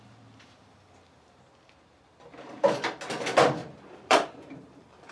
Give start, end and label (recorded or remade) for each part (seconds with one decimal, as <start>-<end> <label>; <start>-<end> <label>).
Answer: 0.0-3.6 recorded; 3.6-5.1 remade